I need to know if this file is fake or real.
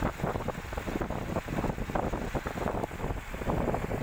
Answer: real